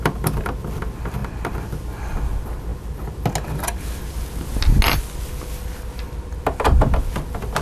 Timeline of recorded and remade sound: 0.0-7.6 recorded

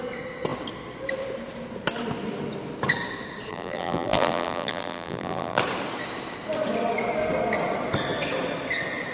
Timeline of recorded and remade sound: 0.0-3.5 recorded; 3.5-5.6 remade; 5.6-9.1 recorded

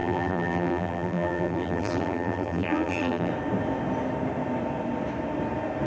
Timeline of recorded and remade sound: 0.0-3.3 remade; 3.3-5.9 recorded

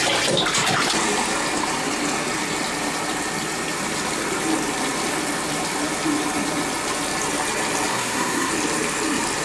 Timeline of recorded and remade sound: 0.0-7.9 recorded; 7.9-8.5 remade; 8.5-9.4 recorded

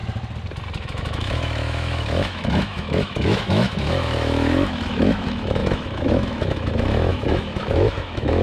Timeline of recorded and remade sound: 0.0-0.8 recorded; 0.8-8.4 remade